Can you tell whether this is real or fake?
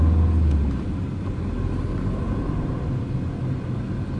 real